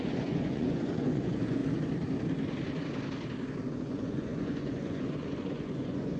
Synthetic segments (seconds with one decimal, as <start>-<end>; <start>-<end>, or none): 0.0-1.6; 3.7-6.2